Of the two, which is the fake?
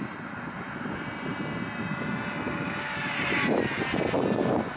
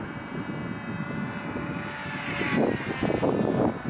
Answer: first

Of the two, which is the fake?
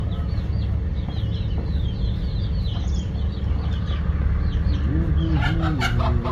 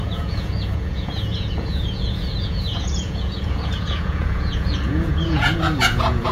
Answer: second